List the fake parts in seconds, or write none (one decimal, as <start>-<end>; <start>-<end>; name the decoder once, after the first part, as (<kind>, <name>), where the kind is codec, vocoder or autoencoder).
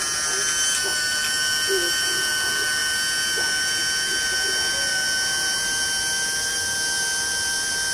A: none